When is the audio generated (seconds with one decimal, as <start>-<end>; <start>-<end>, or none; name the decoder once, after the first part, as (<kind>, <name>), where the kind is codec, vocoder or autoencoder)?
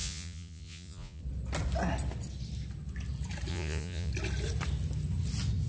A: 0.0-1.2 (vocoder, Vocos); 3.5-4.1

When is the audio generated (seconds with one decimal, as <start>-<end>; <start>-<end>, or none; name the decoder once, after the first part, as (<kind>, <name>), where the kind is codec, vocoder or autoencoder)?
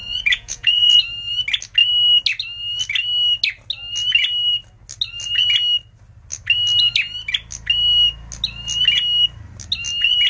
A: 0.0-1.0 (vocoder, Vocos)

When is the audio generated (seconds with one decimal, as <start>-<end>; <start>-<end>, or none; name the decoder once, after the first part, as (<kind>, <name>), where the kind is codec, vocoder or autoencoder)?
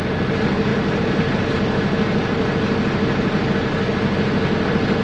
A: none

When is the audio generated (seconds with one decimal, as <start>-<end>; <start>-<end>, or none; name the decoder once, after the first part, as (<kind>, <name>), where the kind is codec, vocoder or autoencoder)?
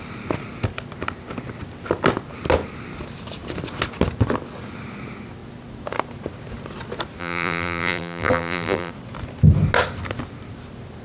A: 7.2-8.9 (vocoder, BigVGAN v2)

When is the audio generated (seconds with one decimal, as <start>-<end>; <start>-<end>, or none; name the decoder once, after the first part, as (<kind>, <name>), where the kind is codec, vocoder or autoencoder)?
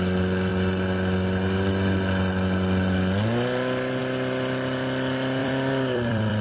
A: 5.4-6.4 (vocoder, BigVGAN v2)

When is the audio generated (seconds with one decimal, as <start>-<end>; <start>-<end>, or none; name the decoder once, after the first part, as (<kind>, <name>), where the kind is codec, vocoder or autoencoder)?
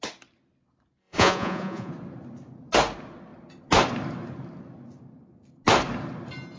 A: 1.0-1.9 (vocoder, Vocos)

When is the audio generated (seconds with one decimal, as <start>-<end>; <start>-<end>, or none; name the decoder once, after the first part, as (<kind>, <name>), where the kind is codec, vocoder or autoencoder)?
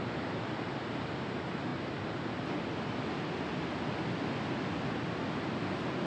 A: none